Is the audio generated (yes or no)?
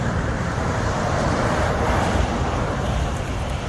yes